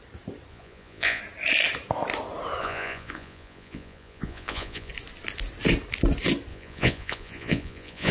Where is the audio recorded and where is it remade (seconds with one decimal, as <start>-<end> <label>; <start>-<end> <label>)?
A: 0.0-0.5 recorded; 0.5-1.2 remade; 1.2-2.6 recorded; 2.6-4.9 remade; 4.9-6.5 recorded; 6.5-8.1 remade